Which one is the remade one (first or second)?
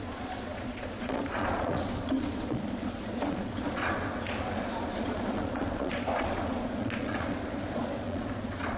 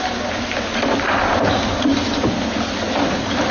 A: first